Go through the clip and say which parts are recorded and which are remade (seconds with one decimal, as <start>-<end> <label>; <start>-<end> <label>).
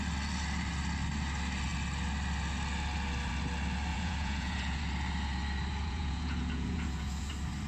0.0-3.9 recorded; 3.9-4.8 remade; 4.8-5.7 recorded; 5.7-7.3 remade; 7.3-7.7 recorded